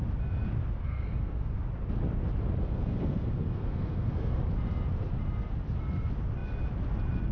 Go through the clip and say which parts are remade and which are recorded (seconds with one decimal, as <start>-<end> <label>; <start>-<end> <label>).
0.0-0.8 recorded; 0.8-1.6 remade; 1.6-2.6 recorded; 2.6-4.4 remade; 4.4-7.3 recorded